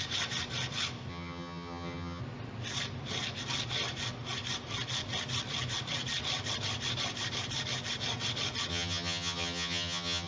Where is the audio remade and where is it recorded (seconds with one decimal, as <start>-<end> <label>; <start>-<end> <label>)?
0.0-1.1 recorded; 1.1-2.2 remade; 2.2-8.7 recorded; 8.7-10.3 remade